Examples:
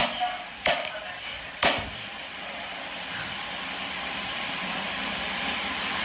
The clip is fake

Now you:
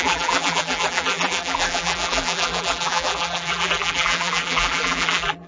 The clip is fake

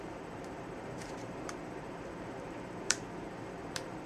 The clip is fake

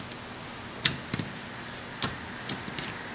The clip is real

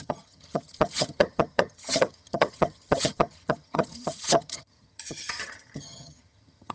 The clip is fake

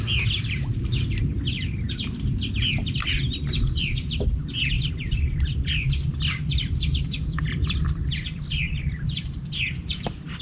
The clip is fake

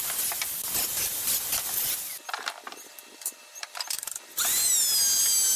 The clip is real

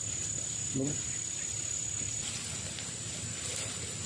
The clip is real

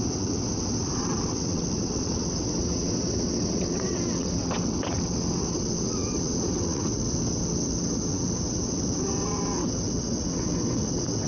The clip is fake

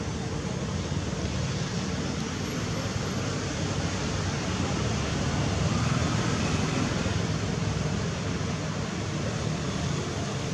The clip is real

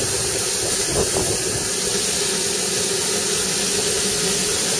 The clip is real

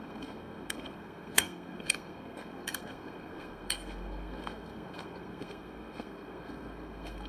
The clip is fake